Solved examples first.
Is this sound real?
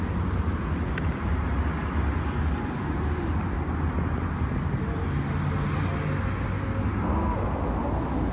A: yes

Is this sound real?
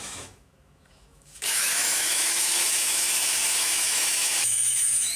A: no